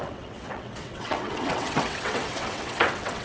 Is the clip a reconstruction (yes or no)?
yes